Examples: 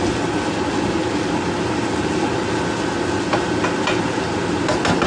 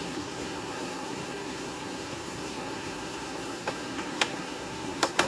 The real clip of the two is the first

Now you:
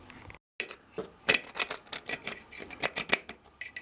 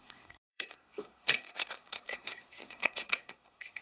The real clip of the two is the first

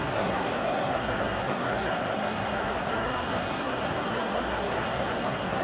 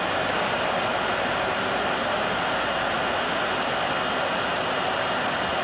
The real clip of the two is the second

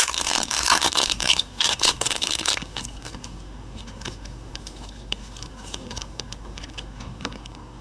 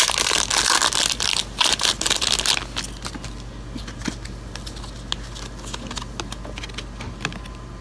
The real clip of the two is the second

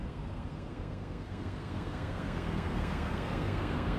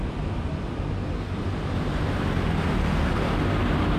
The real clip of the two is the second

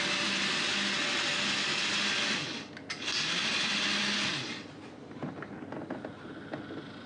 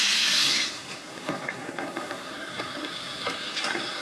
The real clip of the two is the first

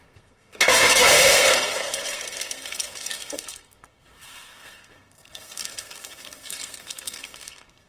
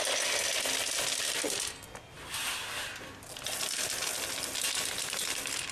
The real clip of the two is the second